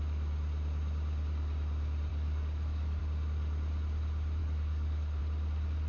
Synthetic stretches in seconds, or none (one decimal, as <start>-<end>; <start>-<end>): 2.1-3.0; 4.4-5.2